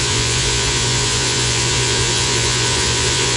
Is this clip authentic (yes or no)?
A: no